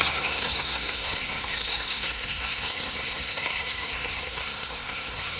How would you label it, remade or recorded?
remade